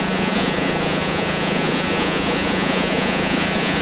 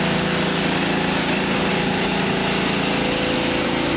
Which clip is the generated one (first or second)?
first